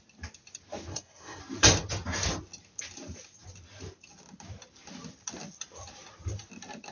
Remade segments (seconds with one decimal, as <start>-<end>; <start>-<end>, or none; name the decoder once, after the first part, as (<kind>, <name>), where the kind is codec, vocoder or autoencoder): 0.9-1.4 (codec, SNAC)